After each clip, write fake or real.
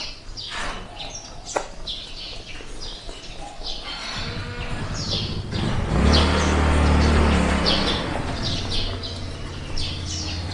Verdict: real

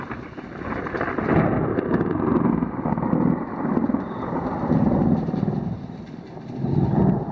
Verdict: real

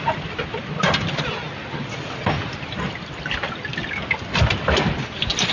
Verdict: real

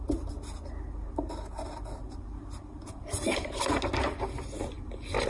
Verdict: real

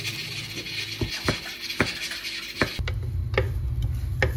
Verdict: real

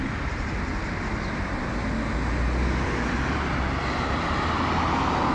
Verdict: real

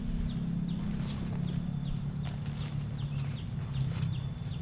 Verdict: real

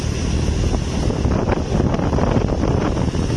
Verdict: real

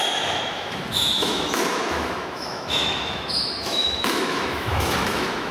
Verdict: fake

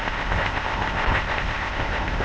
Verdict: fake